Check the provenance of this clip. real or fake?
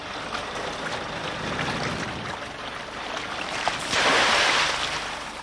real